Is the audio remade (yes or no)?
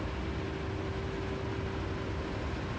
no